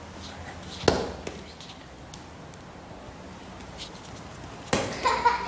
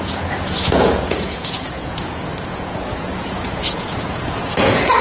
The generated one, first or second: second